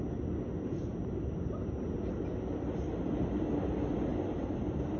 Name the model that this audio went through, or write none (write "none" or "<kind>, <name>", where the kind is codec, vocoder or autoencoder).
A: none